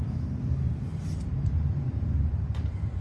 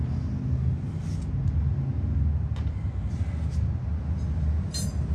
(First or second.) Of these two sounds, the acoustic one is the second